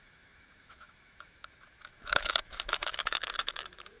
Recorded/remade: remade